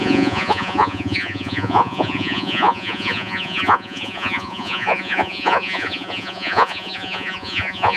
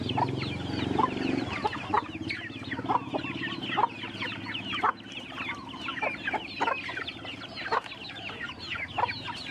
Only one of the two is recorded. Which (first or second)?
second